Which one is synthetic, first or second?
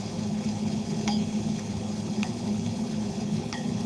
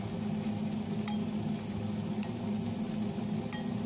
first